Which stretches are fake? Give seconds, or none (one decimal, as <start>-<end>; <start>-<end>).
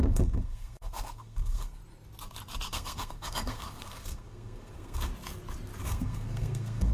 0.0-1.8; 2.7-5.1; 5.8-6.9